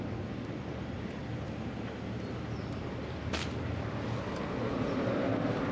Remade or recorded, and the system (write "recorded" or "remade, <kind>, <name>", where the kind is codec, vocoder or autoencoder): recorded